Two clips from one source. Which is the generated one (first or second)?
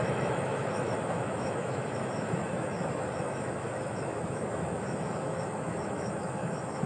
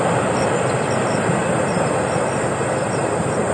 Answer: first